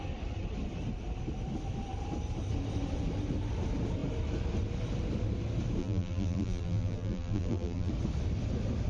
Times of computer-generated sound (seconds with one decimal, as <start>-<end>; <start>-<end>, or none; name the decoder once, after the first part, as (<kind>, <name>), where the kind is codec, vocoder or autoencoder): 5.8-7.9 (vocoder, BigVGAN v2)